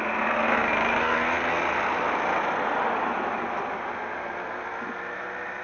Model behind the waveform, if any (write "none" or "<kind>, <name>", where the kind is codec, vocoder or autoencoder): none